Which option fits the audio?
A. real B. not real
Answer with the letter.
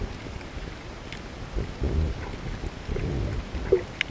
A